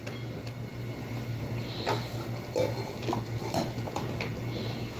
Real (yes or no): yes